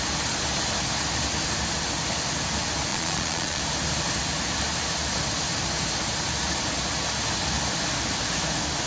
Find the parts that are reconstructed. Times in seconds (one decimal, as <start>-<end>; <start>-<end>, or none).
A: 2.9-3.6